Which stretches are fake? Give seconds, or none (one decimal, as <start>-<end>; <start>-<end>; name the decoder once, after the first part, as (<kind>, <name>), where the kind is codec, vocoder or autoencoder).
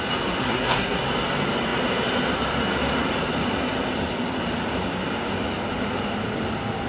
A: 0.4-1.0 (codec, SNAC)